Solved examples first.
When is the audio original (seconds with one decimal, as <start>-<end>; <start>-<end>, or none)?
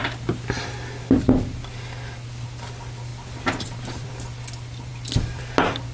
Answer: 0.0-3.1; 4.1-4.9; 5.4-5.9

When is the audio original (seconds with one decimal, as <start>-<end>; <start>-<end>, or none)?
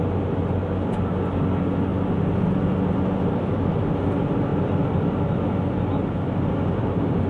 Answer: 0.0-7.3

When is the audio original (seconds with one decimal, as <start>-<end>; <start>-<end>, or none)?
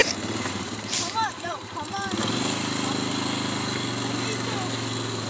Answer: 1.8-5.3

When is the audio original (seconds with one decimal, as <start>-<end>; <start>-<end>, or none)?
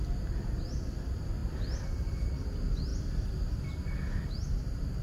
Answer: 0.0-5.0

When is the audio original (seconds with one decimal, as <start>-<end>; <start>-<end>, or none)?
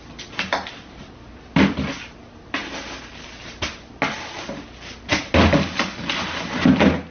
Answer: 0.0-7.1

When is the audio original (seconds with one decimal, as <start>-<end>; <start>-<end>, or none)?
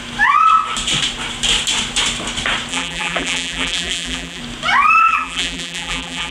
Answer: 0.0-2.7; 4.4-5.0